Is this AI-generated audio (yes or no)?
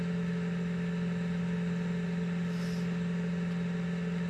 no